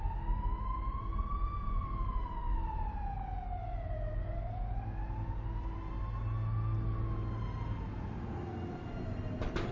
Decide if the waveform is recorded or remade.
recorded